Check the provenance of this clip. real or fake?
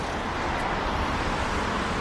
real